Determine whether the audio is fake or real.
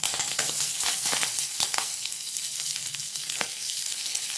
fake